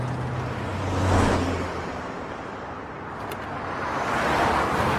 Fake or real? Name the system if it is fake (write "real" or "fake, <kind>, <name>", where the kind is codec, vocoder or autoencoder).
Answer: real